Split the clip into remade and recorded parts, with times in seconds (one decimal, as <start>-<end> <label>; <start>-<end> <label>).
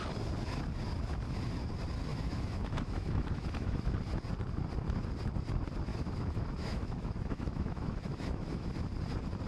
0.0-2.1 recorded; 2.1-3.9 remade; 3.9-5.9 recorded; 5.9-8.7 remade; 8.7-9.5 recorded